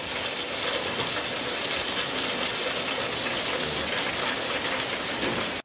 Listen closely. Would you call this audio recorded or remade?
recorded